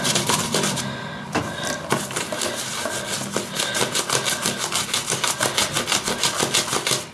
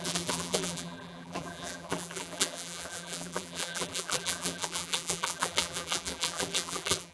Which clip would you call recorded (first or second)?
first